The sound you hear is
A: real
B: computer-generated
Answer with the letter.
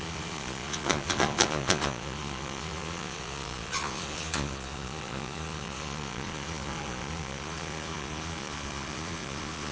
B